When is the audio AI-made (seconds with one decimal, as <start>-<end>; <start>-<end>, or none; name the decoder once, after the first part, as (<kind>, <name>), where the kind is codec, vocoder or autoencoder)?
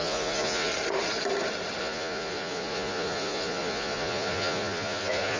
0.0-0.7 (vocoder, Vocos); 1.8-5.4